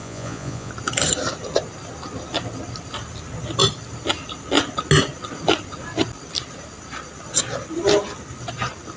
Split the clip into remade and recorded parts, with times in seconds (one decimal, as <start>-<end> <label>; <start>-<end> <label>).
0.0-0.7 remade; 0.7-9.0 recorded